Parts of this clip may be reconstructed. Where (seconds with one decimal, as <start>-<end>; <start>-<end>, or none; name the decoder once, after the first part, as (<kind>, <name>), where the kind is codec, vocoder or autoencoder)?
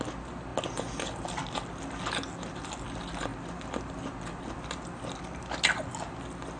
none